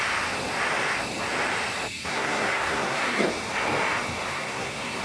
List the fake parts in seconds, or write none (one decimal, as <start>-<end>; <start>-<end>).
2.0-3.3; 4.3-5.0